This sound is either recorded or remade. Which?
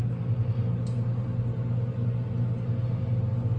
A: recorded